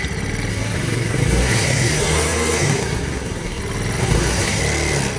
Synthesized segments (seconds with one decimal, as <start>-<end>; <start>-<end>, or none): 0.5-3.6; 4.0-4.6